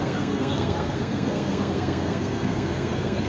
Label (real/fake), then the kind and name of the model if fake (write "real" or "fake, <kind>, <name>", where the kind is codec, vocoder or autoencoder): fake, codec, SNAC